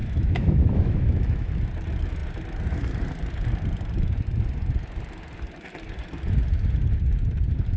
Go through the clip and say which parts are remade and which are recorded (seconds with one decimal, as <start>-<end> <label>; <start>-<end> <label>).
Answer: 0.0-1.5 remade; 1.5-7.8 recorded